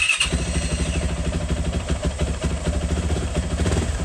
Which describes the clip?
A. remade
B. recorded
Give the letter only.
A